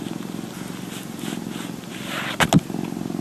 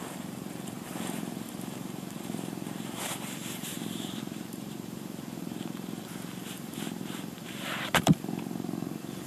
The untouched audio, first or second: first